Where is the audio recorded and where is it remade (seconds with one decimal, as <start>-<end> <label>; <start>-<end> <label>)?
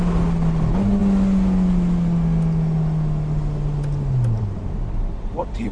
0.0-5.7 recorded